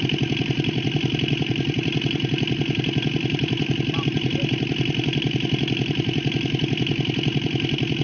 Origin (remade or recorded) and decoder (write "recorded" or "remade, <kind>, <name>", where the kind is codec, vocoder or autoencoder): recorded